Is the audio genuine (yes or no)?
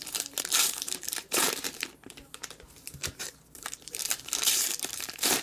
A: no